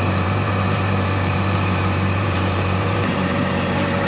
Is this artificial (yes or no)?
yes